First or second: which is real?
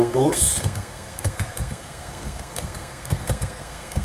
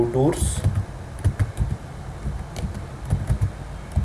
second